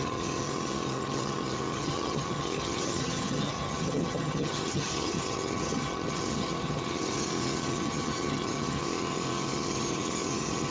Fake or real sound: fake